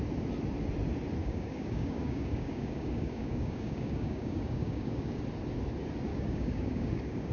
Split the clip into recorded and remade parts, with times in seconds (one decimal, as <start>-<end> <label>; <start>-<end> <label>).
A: 0.0-1.2 recorded; 1.2-5.2 remade; 5.2-6.1 recorded; 6.1-7.3 remade